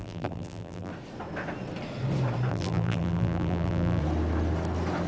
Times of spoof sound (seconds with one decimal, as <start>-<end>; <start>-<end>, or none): 0.0-0.9; 2.5-4.0